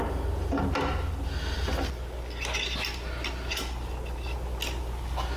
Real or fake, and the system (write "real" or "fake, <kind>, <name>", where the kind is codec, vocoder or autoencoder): real